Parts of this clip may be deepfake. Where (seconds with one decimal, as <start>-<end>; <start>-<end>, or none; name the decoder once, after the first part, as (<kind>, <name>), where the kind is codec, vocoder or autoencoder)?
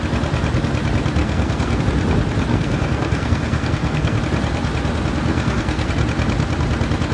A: 1.2-1.8 (codec, SNAC); 2.5-4.2; 5.3-5.9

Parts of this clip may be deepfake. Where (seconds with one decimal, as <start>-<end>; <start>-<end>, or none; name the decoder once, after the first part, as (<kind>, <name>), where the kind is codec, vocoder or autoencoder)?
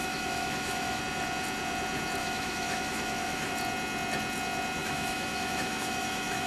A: 0.0-1.0 (autoencoder, DAC-VAE); 2.2-3.5; 4.8-6.5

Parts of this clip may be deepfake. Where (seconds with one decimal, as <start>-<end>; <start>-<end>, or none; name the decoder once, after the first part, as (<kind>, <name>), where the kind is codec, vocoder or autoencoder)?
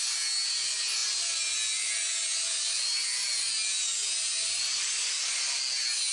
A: none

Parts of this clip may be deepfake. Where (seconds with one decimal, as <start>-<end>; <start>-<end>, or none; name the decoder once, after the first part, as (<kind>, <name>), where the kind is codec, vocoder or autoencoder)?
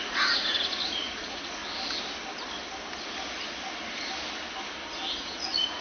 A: 0.0-1.6 (vocoder, Vocos); 5.1-5.8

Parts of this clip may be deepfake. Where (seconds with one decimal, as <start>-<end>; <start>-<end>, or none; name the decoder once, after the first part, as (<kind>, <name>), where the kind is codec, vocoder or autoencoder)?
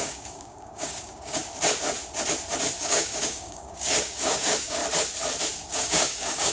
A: 0.0-1.4 (codec, DAC); 2.8-4.8; 5.7-6.5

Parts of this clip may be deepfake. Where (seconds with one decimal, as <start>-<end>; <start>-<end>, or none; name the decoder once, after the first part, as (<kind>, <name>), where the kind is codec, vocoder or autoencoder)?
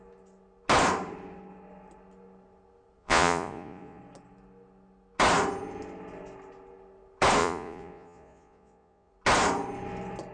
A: 3.0-4.0 (vocoder, Vocos); 7.4-9.1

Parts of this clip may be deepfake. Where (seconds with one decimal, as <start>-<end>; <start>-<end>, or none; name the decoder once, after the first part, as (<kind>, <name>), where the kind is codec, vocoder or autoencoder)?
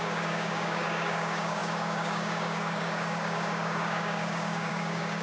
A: 0.0-5.2 (codec, DAC)